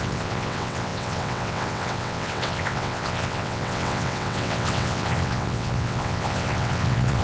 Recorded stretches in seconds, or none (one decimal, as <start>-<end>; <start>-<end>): none